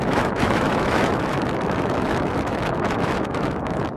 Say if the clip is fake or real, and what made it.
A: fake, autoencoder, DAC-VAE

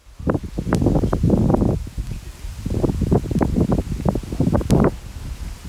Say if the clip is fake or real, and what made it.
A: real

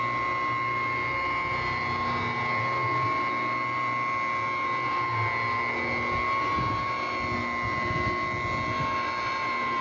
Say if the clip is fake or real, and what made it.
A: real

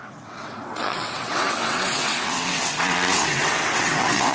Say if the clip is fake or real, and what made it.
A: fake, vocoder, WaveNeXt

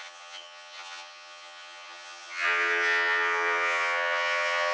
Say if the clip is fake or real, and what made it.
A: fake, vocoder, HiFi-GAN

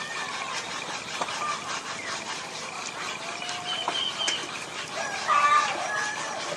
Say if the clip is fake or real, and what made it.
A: real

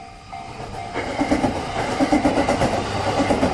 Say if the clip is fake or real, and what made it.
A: real